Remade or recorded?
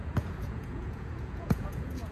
remade